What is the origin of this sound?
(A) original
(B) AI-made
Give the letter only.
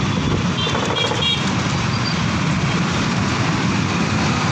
A